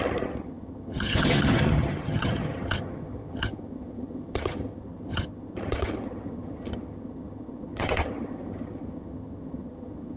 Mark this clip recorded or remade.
remade